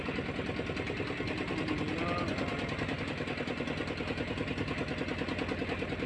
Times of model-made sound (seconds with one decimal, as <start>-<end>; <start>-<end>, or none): none